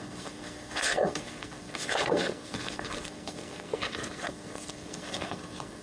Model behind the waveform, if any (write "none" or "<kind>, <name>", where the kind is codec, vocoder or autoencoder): codec, SNAC